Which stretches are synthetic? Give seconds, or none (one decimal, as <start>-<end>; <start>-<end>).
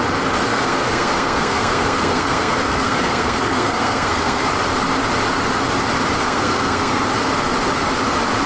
0.5-4.5; 6.2-7.0